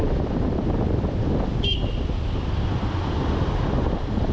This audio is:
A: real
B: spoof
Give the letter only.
B